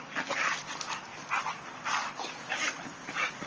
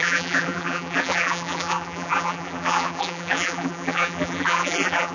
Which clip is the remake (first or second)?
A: second